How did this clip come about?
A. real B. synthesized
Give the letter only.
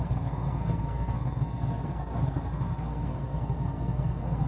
B